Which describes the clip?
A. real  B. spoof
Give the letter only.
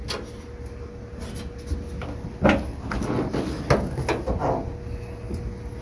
A